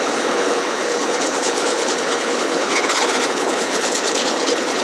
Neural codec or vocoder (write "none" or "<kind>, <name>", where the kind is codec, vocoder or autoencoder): codec, HILCodec